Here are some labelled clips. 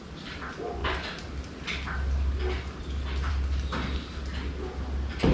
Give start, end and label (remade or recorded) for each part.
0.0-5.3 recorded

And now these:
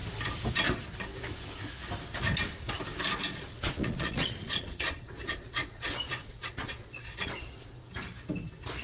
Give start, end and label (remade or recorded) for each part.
0.0-3.3 recorded; 3.3-7.8 remade; 7.8-8.8 recorded

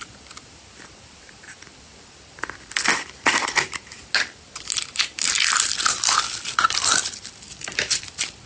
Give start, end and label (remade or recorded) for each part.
0.0-2.9 remade; 2.9-6.2 recorded; 6.2-8.5 remade

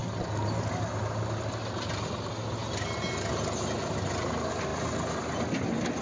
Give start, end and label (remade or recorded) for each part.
0.0-6.0 recorded